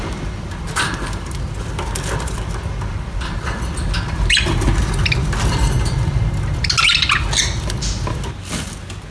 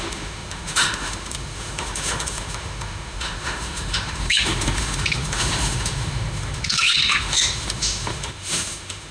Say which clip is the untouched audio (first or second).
first